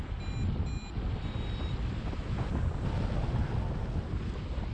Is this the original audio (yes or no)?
yes